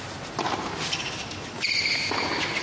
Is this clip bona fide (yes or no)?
yes